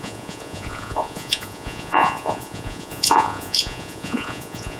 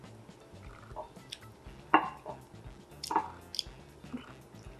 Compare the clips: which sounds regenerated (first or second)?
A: first